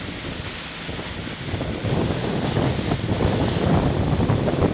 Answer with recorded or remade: recorded